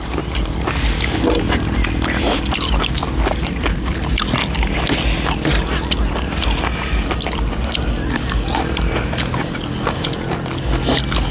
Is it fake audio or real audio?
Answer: real